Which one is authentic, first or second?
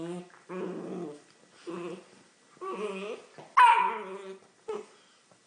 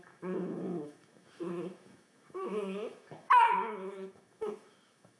first